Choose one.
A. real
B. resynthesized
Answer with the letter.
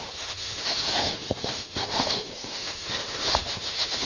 B